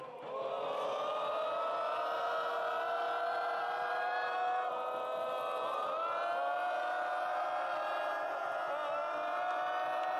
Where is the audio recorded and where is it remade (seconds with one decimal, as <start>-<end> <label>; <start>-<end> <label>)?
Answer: 0.0-10.2 recorded